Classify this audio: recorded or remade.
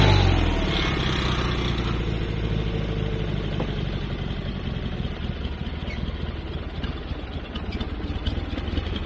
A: recorded